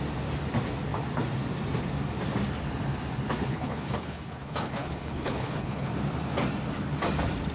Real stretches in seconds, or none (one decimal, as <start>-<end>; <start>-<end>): 0.0-3.5; 5.9-7.5